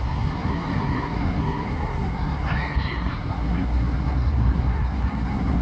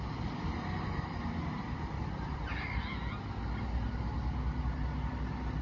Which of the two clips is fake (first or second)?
first